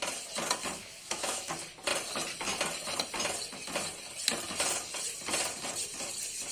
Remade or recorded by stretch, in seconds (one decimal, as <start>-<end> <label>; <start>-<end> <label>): 0.0-0.8 recorded; 0.8-1.5 remade; 1.5-6.5 recorded